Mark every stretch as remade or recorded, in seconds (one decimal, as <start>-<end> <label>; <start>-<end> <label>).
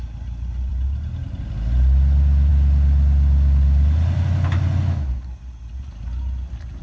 0.0-6.8 recorded